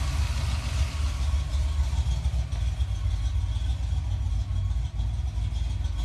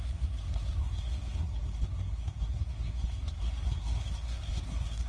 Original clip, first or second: first